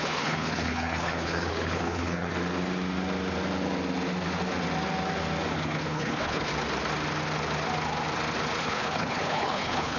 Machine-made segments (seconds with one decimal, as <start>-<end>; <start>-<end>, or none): 0.0-2.3; 5.5-6.5; 8.6-10.0